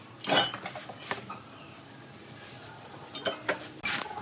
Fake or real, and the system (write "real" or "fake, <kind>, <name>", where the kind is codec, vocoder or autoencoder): real